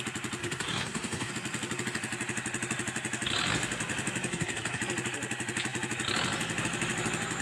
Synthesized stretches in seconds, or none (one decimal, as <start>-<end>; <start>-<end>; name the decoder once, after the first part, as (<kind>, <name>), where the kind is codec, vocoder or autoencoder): 0.4-1.3 (codec, SNAC); 4.3-4.8

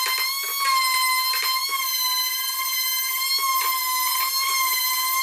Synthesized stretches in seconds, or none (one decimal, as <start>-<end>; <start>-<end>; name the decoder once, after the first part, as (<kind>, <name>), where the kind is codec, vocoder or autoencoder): none